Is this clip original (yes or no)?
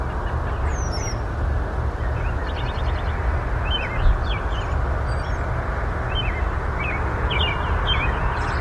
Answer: yes